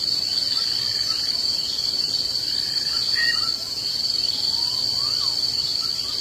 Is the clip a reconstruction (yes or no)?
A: no